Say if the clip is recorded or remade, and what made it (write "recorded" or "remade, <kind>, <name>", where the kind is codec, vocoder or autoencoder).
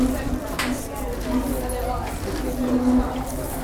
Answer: recorded